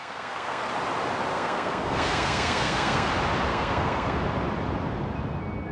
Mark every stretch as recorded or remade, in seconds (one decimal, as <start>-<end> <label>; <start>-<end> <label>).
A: 0.0-0.7 remade; 0.7-1.3 recorded; 1.3-3.1 remade; 3.1-3.5 recorded; 3.5-4.2 remade; 4.2-5.7 recorded